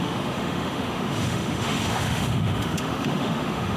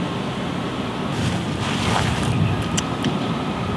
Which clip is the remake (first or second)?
first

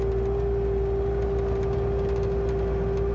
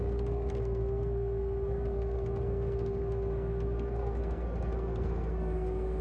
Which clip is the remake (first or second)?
second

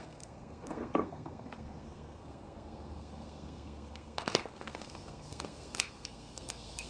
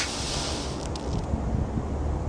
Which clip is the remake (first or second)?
first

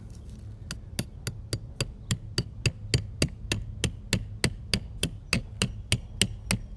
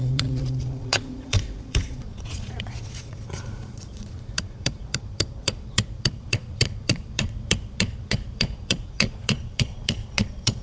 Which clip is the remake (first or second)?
second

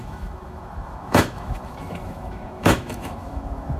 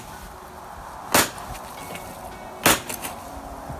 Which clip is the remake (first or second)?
first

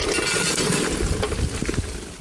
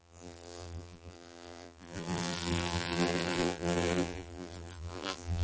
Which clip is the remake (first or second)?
second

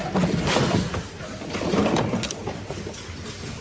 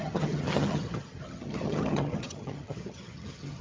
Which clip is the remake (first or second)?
second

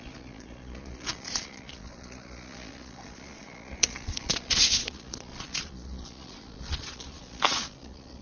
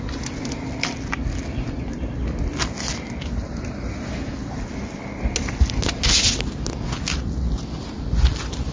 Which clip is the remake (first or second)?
first